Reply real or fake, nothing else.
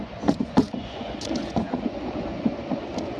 fake